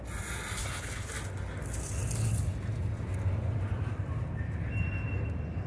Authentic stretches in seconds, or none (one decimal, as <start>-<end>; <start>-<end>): 0.0-0.6; 1.1-5.7